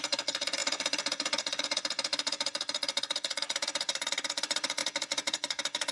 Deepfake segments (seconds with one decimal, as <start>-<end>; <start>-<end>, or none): 0.0-5.9

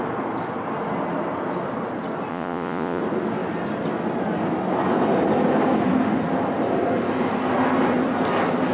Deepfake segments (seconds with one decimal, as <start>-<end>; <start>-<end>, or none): 2.3-3.0

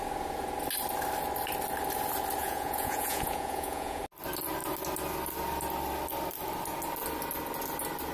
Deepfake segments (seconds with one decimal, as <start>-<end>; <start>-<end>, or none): 2.4-4.0

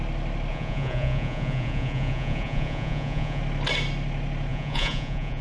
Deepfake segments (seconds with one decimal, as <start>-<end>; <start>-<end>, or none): 0.5-3.4; 4.5-5.4